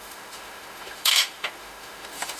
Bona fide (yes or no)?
no